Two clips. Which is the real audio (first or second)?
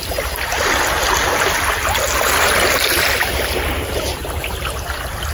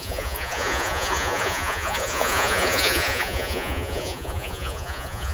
first